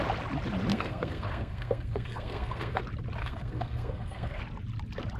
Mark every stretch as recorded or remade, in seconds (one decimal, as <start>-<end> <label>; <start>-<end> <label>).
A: 0.0-0.7 recorded; 0.7-2.8 remade; 2.8-3.2 recorded; 3.2-4.4 remade; 4.4-5.2 recorded

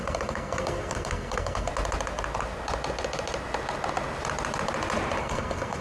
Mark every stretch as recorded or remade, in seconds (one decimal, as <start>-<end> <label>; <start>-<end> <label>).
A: 0.0-1.7 remade; 1.7-5.2 recorded; 5.2-5.8 remade

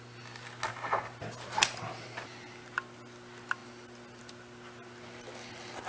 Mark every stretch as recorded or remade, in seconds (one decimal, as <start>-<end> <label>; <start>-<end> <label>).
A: 0.0-5.9 recorded

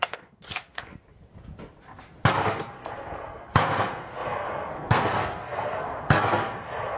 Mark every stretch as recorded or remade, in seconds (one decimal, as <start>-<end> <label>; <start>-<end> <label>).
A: 0.0-0.9 remade; 0.9-2.3 recorded; 2.3-7.0 remade

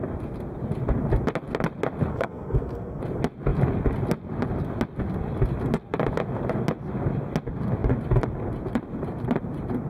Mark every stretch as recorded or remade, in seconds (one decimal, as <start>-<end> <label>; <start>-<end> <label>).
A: 0.0-2.1 recorded; 2.1-3.0 remade; 3.0-9.9 recorded

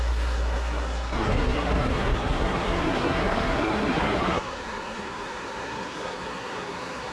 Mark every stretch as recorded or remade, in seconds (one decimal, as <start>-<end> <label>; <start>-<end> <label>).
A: 0.0-7.1 remade